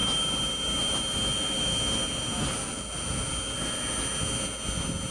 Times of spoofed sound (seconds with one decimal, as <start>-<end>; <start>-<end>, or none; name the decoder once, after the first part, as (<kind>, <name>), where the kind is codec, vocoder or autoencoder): none